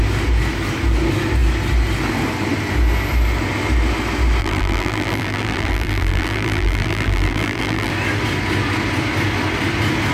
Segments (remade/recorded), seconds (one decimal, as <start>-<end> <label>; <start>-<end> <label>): 0.0-4.4 recorded; 4.4-7.9 remade; 7.9-10.1 recorded

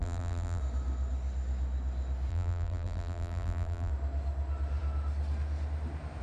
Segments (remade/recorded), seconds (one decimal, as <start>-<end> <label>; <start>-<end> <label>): 0.0-0.6 remade; 0.6-2.3 recorded; 2.3-3.9 remade; 3.9-6.2 recorded

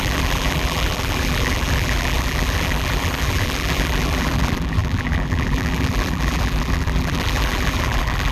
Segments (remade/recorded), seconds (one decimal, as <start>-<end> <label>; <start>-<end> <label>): 0.0-8.3 remade